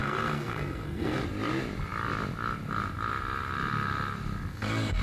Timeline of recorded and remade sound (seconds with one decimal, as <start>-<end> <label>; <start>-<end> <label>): 0.0-1.2 remade; 1.2-4.5 recorded; 4.5-5.0 remade